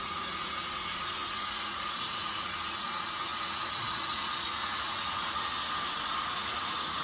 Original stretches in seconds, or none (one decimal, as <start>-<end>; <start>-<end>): 5.5-6.2